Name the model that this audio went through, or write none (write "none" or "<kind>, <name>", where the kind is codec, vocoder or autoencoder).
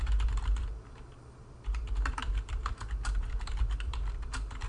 vocoder, BigVGAN v2